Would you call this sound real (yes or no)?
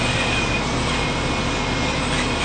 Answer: yes